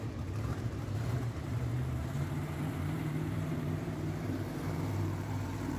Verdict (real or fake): fake